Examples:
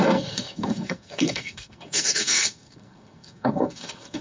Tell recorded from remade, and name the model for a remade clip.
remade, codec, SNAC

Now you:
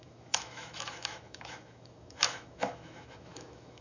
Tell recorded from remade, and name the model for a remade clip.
remade, autoencoder, DAC-VAE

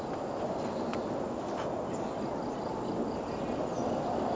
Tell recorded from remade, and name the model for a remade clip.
recorded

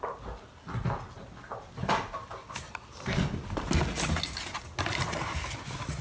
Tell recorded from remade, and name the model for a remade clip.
recorded